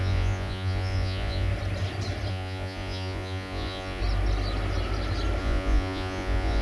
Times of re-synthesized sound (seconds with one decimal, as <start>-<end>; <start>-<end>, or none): 0.0-1.5; 2.3-4.0; 5.4-6.6